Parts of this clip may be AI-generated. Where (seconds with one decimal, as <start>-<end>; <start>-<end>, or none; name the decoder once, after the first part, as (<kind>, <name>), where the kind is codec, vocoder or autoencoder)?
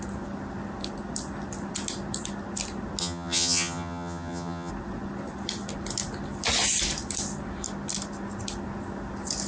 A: 3.0-4.7 (vocoder, HiFi-GAN)